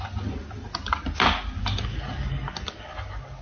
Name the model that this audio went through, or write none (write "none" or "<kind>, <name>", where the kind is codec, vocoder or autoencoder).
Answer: none